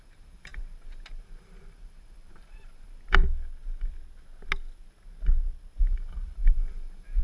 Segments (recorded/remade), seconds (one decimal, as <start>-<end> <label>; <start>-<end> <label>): 0.0-3.2 remade; 3.2-5.8 recorded; 5.8-7.2 remade